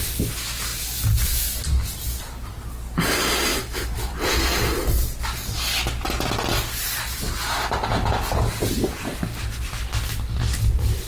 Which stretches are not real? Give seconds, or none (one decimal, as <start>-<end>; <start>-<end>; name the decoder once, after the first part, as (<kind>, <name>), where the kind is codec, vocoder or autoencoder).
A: 3.5-4.1 (autoencoder, DAC-VAE)